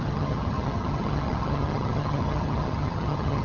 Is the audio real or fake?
fake